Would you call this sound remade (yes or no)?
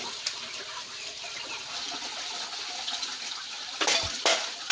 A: no